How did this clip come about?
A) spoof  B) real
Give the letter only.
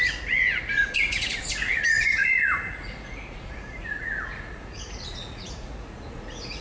A